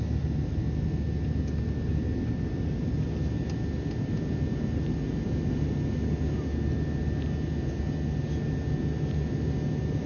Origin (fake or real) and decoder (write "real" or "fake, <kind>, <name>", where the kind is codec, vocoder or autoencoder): real